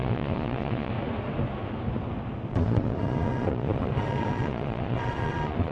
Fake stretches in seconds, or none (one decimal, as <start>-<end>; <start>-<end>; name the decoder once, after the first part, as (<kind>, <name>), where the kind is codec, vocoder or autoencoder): 0.0-0.9 (vocoder, Vocos); 2.5-5.7